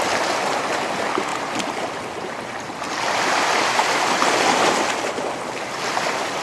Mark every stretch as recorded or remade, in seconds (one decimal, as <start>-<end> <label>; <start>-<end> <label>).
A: 0.0-6.4 recorded